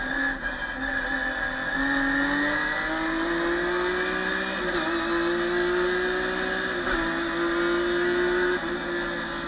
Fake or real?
real